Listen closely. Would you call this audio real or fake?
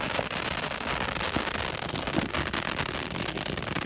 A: real